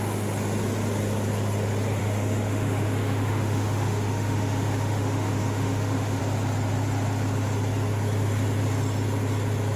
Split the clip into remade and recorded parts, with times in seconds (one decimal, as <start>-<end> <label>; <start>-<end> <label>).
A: 0.0-2.0 recorded; 2.0-6.2 remade; 6.2-9.8 recorded